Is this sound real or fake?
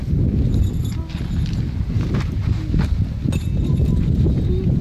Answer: real